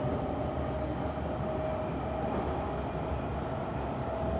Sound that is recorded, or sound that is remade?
recorded